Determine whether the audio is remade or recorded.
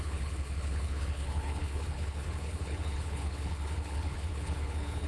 remade